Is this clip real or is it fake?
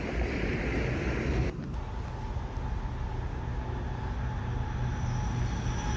real